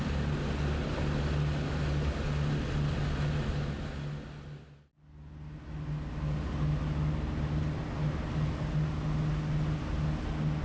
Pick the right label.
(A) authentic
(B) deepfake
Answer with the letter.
A